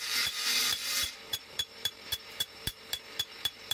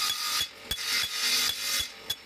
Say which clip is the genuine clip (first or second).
second